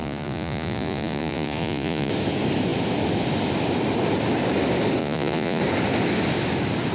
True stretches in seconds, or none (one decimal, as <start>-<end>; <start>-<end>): 2.1-5.0; 5.6-6.9